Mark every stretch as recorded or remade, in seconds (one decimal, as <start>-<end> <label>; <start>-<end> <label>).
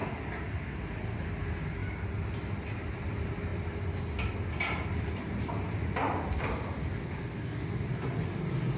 0.0-8.8 recorded